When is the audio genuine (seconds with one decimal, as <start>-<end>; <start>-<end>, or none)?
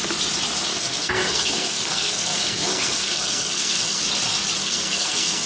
0.0-0.7; 4.0-4.6